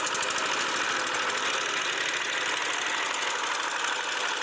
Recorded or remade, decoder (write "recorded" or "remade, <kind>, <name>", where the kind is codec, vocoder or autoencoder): recorded